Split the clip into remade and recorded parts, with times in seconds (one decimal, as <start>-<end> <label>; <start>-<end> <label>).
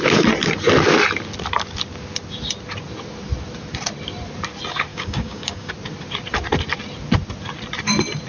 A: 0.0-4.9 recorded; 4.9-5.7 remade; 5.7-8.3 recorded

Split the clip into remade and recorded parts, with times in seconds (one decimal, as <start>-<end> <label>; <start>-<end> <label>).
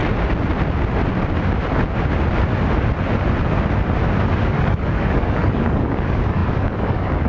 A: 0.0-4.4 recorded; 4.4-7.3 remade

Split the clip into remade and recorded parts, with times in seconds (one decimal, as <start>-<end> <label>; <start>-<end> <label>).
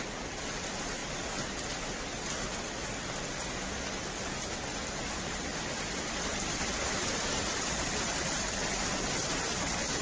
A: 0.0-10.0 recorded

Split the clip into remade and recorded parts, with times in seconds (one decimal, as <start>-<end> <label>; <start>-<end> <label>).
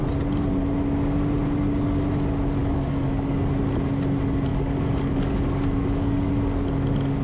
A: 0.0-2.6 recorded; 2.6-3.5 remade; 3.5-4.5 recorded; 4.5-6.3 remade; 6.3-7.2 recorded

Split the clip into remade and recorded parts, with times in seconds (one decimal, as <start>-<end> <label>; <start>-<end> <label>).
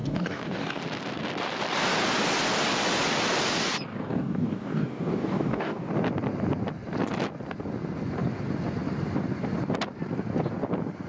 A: 0.0-0.8 remade; 0.8-3.9 recorded; 3.9-5.9 remade; 5.9-11.1 recorded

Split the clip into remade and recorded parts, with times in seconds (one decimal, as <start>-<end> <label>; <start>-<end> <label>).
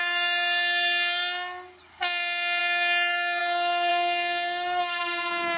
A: 0.0-3.9 recorded; 3.9-5.0 remade; 5.0-5.6 recorded